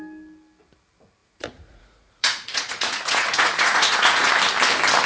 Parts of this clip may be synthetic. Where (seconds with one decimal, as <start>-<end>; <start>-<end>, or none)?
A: 1.2-4.3